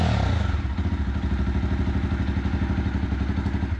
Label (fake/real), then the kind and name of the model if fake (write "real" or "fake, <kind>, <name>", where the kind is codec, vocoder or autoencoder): real